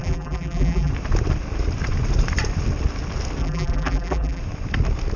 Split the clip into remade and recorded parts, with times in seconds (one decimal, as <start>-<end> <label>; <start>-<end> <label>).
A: 0.0-0.9 remade; 0.9-3.4 recorded; 3.4-4.4 remade; 4.4-5.2 recorded